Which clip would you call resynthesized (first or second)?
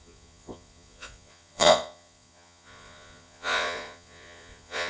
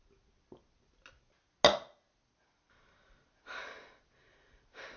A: first